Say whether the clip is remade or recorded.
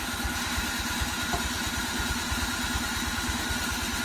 remade